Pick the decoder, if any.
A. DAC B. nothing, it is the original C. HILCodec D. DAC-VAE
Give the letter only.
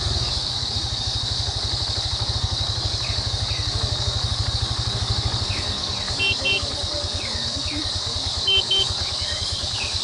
A